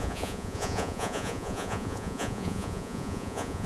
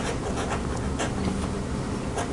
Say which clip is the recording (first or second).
second